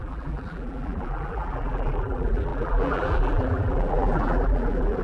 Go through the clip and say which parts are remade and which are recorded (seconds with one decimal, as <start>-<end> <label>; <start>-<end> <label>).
0.0-5.0 remade

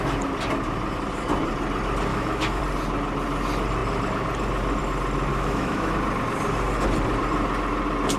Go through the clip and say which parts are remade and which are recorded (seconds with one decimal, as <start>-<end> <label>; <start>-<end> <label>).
0.0-2.1 recorded; 2.1-2.6 remade; 2.6-5.3 recorded; 5.3-5.9 remade; 5.9-8.2 recorded